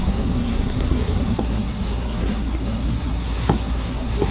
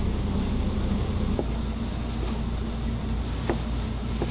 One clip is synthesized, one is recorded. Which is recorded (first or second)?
second